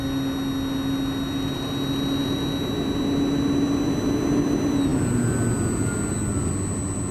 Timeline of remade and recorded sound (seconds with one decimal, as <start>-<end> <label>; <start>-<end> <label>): 0.0-7.1 recorded